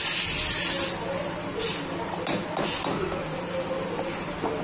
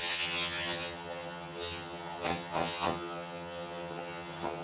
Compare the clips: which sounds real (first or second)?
first